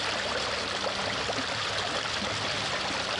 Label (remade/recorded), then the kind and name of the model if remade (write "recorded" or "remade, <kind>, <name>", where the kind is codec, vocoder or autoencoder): recorded